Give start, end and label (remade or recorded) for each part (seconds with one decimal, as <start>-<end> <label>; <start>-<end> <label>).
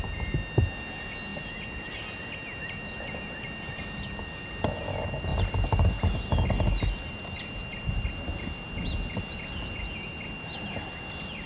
0.0-11.5 recorded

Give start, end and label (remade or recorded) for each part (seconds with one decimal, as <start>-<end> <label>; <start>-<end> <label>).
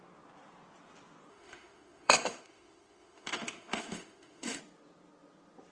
0.0-1.3 recorded; 1.3-4.6 remade; 4.6-5.7 recorded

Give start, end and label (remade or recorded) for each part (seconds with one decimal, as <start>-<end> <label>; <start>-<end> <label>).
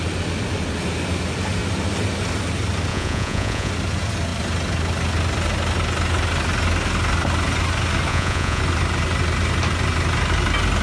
0.0-2.9 recorded; 2.9-3.7 remade; 3.7-8.1 recorded; 8.1-8.6 remade; 8.6-10.8 recorded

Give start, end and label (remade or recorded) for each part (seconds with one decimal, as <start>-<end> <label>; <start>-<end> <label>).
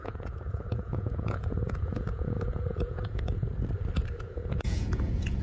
0.0-3.5 remade; 3.5-4.2 recorded; 4.2-5.4 remade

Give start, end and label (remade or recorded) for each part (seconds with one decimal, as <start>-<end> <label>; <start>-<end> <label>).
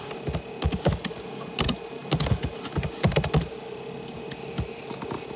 0.0-5.4 recorded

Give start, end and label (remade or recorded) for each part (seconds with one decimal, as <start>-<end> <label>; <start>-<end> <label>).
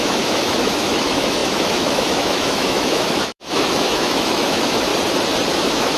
0.0-4.9 remade; 4.9-5.5 recorded; 5.5-6.0 remade